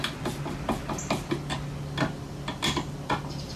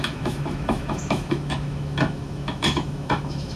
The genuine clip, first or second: first